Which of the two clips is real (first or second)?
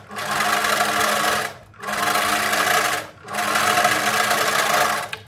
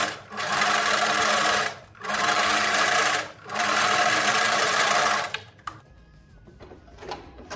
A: first